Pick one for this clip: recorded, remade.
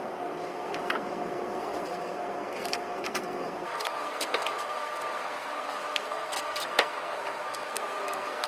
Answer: remade